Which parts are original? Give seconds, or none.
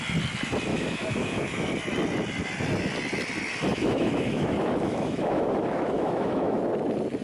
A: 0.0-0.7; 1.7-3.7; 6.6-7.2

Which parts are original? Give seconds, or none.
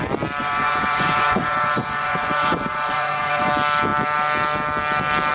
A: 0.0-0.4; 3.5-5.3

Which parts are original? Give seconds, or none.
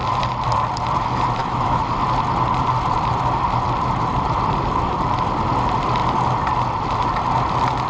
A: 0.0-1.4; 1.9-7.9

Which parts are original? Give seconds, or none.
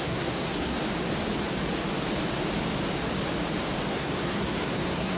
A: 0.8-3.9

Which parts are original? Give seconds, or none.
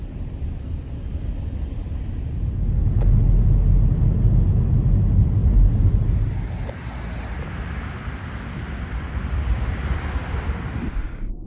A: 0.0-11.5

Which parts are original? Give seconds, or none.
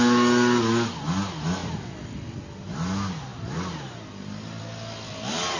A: 0.0-5.6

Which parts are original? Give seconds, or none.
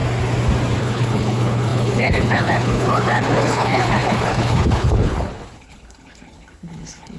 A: 0.0-0.8